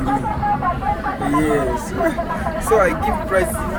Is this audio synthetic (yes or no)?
yes